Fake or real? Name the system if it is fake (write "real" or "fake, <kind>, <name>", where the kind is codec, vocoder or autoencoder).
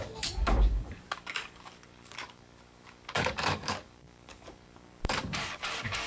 fake, codec, DAC